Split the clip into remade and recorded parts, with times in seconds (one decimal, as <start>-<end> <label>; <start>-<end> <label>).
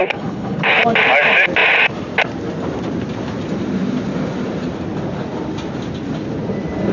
0.0-0.8 remade; 0.8-6.9 recorded